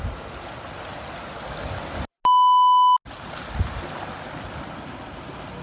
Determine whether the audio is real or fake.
real